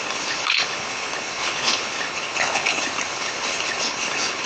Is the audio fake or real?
fake